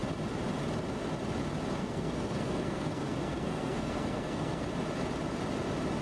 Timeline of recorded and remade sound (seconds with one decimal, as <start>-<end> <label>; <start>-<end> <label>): 0.0-1.8 recorded; 1.8-4.7 remade; 4.7-6.0 recorded